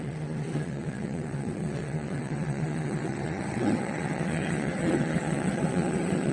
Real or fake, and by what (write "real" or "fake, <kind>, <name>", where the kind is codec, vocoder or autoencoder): fake, vocoder, WaveNeXt